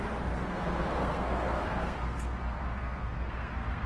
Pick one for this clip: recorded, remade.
remade